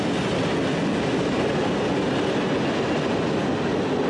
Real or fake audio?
real